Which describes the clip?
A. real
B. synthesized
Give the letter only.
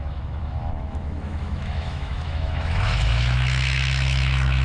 B